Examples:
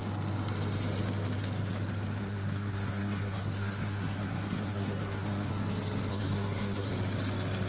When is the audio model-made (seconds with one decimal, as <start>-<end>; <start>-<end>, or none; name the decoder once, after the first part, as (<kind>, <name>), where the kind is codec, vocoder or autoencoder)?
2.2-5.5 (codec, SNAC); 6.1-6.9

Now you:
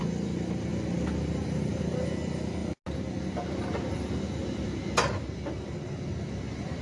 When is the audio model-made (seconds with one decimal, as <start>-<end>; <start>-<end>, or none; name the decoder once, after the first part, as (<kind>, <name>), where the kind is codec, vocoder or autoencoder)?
none

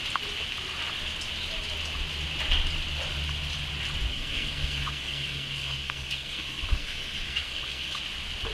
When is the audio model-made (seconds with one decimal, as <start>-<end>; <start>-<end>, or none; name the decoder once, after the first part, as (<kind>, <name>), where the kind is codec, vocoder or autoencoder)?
4.1-8.0 (codec, SNAC)

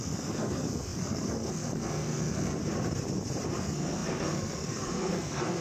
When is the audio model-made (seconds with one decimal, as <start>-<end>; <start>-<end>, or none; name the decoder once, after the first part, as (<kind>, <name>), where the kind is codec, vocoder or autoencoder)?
0.0-2.6 (codec, SNAC); 3.6-5.6

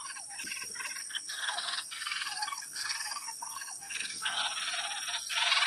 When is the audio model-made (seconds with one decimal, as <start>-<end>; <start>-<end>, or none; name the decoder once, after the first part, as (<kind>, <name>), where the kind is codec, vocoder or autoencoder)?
1.0-4.4 (codec, SNAC)

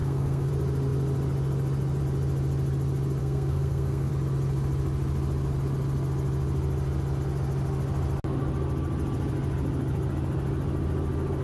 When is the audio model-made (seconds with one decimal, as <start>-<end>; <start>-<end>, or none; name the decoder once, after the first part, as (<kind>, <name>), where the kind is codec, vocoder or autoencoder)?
0.0-0.5 (codec, SNAC); 3.2-4.1

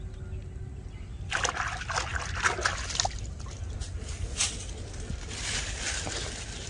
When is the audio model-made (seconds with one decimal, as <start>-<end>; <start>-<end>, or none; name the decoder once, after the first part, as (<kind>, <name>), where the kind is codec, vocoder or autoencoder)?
none

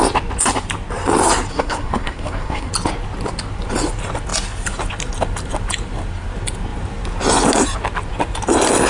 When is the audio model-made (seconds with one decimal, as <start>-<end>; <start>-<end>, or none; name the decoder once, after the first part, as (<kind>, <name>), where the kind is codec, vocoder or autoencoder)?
1.5-2.7 (codec, SNAC)